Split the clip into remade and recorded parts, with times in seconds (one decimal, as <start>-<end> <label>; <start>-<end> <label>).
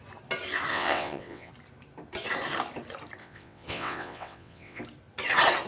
0.0-0.7 recorded; 0.7-1.5 remade; 1.5-3.2 recorded; 3.2-4.8 remade; 4.8-5.7 recorded